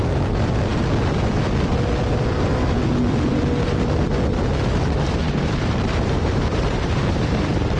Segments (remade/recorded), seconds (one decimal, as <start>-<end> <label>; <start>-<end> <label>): 0.0-5.2 recorded; 5.2-7.8 remade